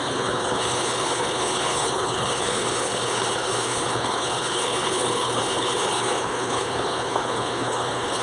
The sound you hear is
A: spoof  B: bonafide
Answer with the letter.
A